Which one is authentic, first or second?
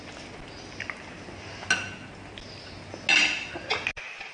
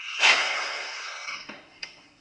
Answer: first